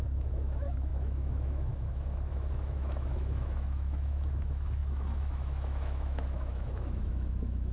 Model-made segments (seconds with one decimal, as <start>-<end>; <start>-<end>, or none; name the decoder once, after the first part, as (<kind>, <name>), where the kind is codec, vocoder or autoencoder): 0.0-7.7 (autoencoder, DAC-VAE)